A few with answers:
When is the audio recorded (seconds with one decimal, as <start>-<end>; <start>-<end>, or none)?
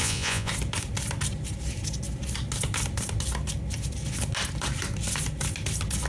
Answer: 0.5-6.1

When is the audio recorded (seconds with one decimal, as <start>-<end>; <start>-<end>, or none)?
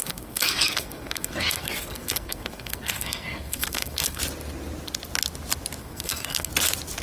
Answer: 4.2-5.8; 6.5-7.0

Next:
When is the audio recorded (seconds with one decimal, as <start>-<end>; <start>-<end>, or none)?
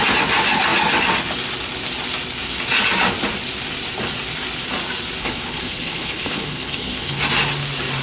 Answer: 0.0-5.2; 7.2-8.0